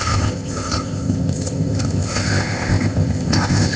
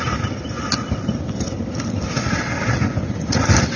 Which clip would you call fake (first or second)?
first